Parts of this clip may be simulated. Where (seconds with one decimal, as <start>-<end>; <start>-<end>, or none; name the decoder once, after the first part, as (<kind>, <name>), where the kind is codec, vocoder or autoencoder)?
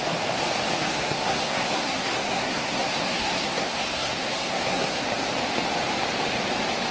0.9-5.0 (codec, SNAC)